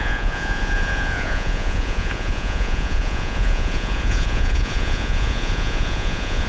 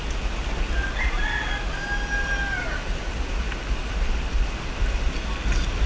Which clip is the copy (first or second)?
first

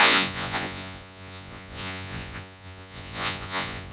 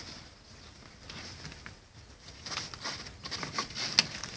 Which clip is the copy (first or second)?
first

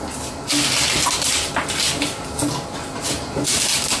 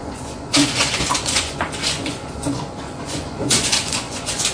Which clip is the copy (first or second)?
second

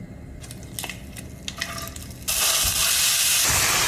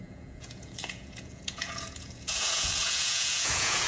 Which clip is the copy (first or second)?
second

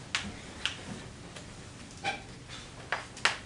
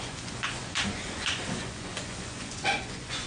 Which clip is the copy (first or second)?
second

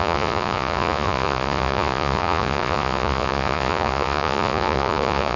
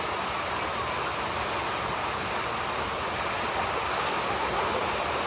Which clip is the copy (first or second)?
first